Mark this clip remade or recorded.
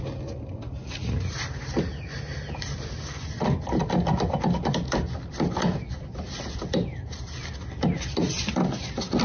recorded